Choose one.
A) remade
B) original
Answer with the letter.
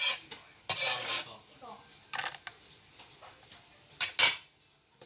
B